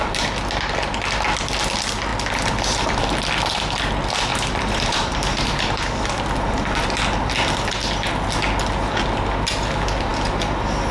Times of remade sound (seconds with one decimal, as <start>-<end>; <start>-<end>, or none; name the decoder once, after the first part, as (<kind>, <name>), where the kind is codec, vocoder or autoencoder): 4.3-6.0 (vocoder, BigVGAN v2)